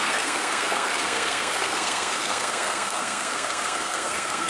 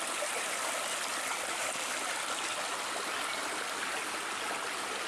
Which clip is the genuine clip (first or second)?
second